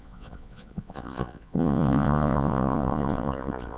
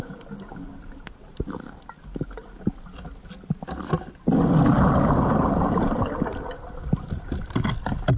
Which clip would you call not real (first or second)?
first